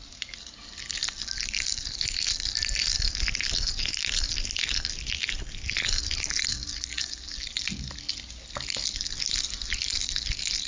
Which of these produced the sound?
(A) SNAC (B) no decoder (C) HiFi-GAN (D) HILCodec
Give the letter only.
B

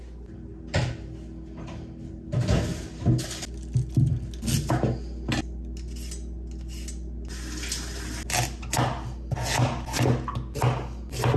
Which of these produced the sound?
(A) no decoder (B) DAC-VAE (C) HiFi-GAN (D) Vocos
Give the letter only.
A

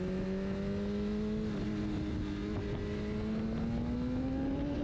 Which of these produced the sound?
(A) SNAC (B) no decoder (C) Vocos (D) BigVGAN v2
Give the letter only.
B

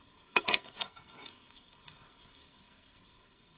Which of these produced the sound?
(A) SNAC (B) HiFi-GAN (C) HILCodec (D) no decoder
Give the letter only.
A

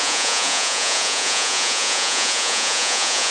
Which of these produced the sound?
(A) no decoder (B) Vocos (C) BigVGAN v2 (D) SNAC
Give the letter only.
B